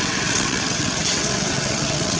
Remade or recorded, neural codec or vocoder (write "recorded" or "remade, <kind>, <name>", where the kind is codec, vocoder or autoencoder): remade, vocoder, WaveNeXt